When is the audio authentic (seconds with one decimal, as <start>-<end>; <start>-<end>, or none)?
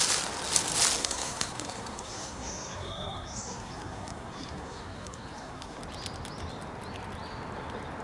0.0-1.0; 5.8-8.0